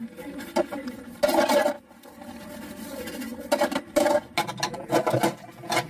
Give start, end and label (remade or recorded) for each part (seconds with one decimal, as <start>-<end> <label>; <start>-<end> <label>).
0.0-5.9 recorded